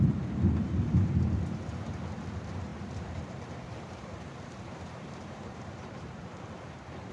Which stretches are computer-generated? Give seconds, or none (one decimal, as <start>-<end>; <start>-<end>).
2.7-6.4